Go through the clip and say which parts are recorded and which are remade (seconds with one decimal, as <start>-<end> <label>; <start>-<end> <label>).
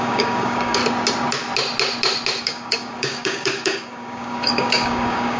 0.0-0.8 remade; 0.8-2.4 recorded; 2.4-5.4 remade